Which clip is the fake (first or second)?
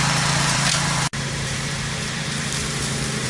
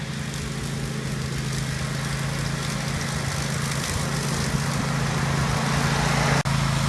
first